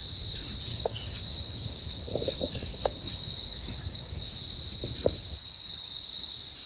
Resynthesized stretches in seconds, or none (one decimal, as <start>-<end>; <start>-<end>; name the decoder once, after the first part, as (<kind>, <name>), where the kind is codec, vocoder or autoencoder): 0.7-4.4 (codec, DAC); 5.3-6.3